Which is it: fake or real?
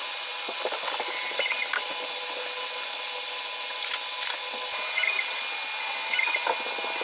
real